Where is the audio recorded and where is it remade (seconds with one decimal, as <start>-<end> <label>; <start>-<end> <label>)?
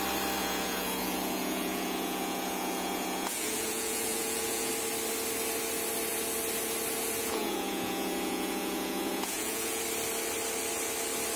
0.0-0.4 recorded; 0.4-4.7 remade; 4.7-7.2 recorded; 7.2-9.8 remade; 9.8-11.4 recorded